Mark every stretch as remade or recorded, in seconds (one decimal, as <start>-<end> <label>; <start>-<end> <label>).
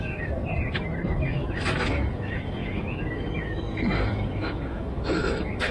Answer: 0.0-0.4 remade; 0.4-1.2 recorded; 1.2-5.7 remade